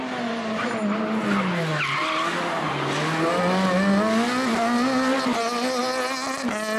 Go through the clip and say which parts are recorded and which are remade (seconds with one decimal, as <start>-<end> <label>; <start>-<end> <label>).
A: 0.0-6.8 recorded